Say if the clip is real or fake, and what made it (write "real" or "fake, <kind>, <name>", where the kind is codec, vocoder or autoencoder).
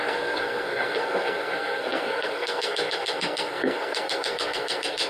fake, codec, SNAC